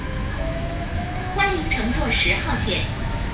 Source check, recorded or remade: remade